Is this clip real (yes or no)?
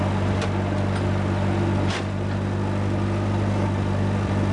yes